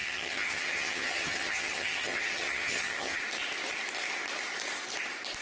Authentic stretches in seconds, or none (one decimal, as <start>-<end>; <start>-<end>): 3.2-5.4